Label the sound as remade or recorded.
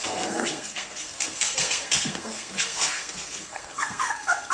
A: remade